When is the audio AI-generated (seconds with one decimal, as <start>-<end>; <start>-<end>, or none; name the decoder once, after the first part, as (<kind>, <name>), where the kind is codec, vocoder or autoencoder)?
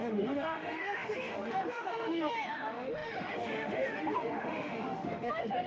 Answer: 0.0-5.7 (autoencoder, DAC-VAE)